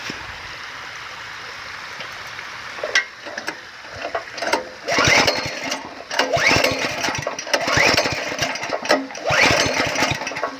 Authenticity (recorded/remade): recorded